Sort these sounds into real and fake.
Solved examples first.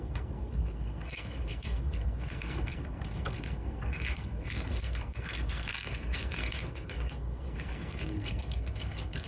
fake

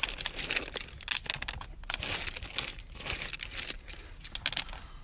real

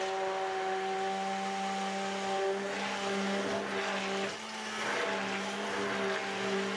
real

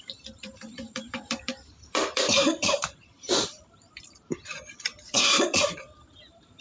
fake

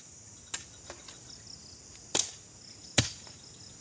real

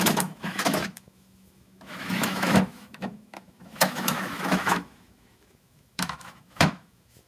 fake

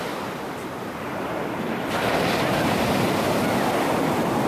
real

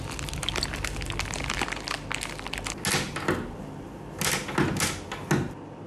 real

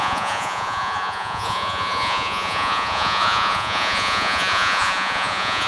fake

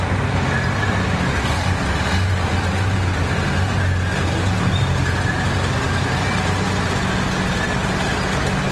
real